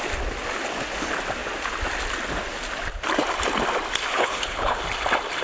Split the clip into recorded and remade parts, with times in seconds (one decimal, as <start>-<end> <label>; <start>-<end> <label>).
0.0-4.1 recorded; 4.1-4.8 remade; 4.8-5.4 recorded